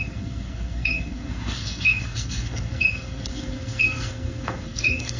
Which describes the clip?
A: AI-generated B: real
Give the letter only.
A